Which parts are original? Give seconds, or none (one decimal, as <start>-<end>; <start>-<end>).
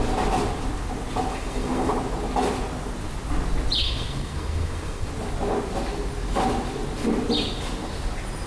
0.0-1.3; 1.9-3.8; 5.1-8.5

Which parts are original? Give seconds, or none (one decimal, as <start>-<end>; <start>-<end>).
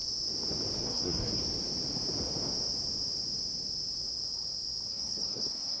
0.0-0.8; 1.4-4.9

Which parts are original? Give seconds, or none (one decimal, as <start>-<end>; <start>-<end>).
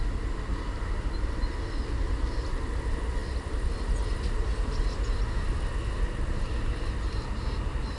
0.0-8.0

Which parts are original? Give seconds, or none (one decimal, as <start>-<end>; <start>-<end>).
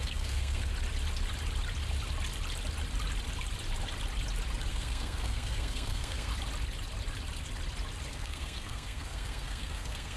0.7-4.7; 6.3-8.1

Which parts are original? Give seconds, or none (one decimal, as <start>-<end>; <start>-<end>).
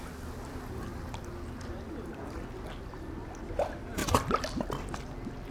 0.0-5.5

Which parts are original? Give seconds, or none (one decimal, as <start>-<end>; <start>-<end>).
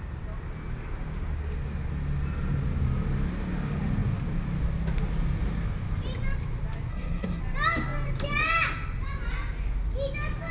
0.0-6.9; 7.4-10.5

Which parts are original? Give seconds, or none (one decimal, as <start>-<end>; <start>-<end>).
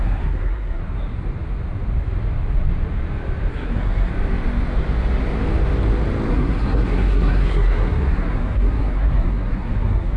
0.8-3.5; 4.1-6.3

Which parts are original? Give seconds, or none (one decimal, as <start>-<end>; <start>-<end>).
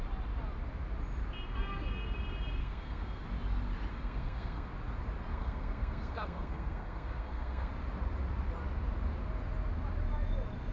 0.0-2.6; 3.2-3.9; 4.7-5.3; 7.7-10.7